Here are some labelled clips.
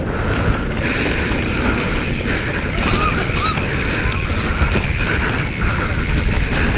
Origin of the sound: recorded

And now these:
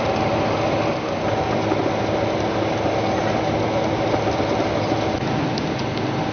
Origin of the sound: recorded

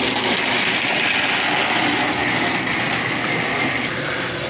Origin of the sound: recorded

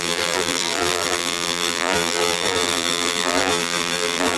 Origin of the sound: remade